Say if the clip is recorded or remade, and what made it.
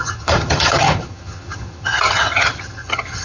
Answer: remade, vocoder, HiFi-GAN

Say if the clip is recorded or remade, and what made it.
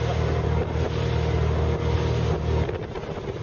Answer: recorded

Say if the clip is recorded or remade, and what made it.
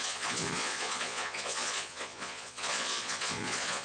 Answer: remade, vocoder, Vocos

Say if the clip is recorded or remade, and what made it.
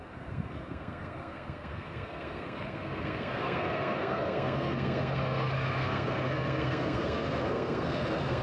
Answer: remade, codec, SNAC